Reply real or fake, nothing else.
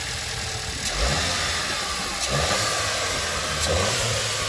real